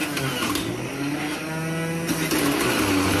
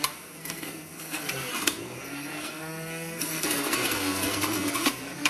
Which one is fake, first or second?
second